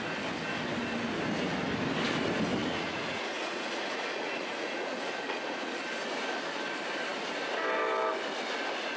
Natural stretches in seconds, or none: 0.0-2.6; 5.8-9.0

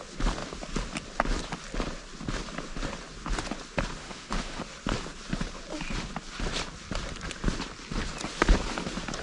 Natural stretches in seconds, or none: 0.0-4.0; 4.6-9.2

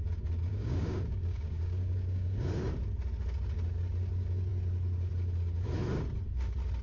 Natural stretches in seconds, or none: 0.0-0.5; 2.6-6.8

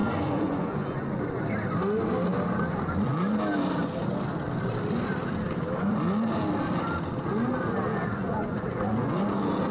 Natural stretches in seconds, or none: 1.2-7.9; 9.2-9.7